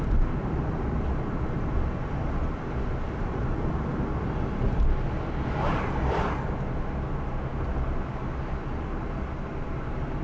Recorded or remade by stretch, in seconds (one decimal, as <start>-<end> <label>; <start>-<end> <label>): 0.0-10.2 recorded